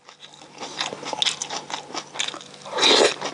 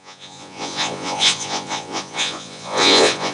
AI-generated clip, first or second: second